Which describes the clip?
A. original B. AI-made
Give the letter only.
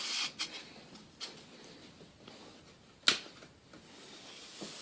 A